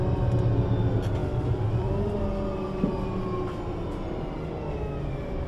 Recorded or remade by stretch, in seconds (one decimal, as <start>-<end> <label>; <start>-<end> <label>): 0.0-5.5 recorded